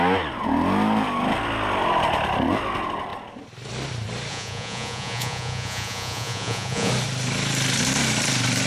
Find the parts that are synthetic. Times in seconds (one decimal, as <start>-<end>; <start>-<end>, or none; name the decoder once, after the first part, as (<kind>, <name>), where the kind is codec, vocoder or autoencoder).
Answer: 4.3-6.9 (vocoder, Vocos)